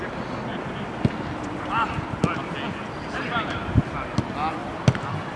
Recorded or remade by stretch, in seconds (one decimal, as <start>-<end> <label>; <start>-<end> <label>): 0.0-0.5 recorded; 0.5-2.5 remade; 2.5-4.6 recorded; 4.6-5.4 remade